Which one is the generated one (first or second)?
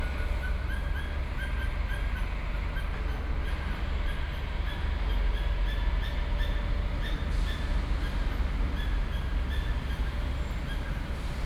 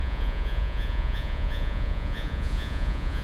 second